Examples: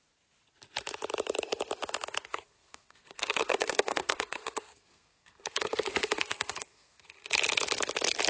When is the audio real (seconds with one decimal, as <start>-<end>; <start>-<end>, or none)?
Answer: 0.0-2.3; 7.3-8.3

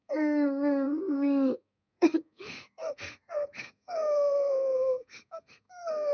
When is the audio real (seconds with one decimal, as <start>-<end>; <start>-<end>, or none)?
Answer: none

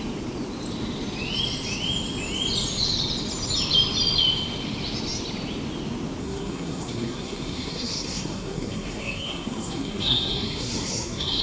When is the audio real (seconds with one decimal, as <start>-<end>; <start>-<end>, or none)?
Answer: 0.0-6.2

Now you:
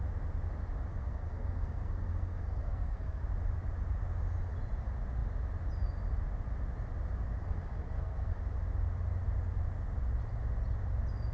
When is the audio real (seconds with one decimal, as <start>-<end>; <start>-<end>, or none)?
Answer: 0.0-0.9; 3.2-7.4; 8.4-11.3

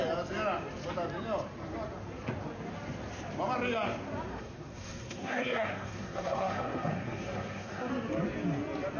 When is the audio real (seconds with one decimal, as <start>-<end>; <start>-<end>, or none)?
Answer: 0.0-4.3; 7.9-9.0

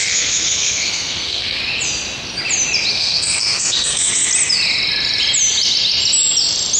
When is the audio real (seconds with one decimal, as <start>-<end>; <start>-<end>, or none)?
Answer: 1.6-2.9; 4.3-6.8